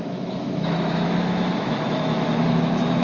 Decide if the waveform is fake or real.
fake